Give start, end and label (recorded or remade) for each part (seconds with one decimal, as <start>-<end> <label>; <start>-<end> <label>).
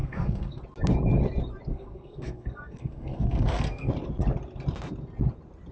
0.0-0.6 remade; 0.6-1.7 recorded; 1.7-3.9 remade; 3.9-5.7 recorded